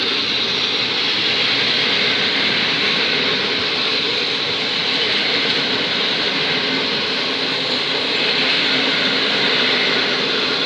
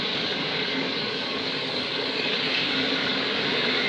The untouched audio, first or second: first